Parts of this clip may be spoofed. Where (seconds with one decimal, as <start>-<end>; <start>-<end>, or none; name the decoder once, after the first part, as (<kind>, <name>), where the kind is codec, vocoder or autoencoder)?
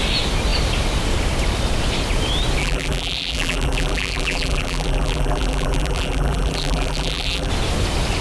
2.6-7.5 (vocoder, BigVGAN v2)